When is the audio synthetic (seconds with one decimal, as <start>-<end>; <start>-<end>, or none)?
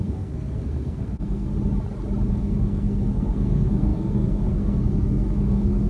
0.0-1.5; 2.3-5.9